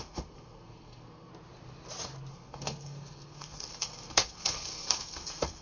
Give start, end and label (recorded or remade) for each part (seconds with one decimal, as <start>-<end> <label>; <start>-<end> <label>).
0.0-1.3 remade; 1.3-2.3 recorded; 2.3-5.6 remade